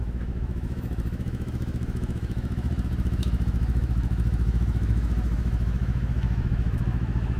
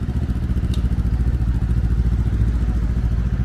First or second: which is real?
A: second